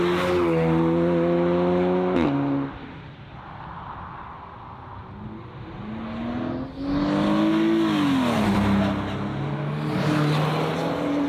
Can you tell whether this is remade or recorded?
recorded